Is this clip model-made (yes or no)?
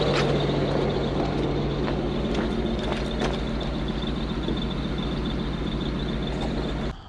no